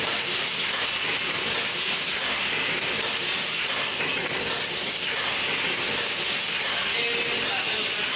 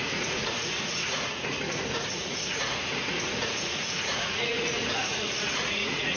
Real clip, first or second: first